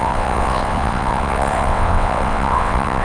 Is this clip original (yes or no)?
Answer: no